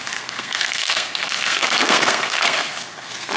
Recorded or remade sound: remade